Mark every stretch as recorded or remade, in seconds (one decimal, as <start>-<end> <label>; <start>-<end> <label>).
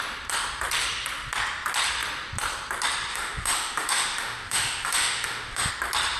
0.0-3.1 recorded; 3.1-5.7 remade; 5.7-6.2 recorded